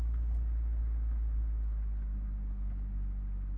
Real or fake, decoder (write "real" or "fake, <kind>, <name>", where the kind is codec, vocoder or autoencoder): real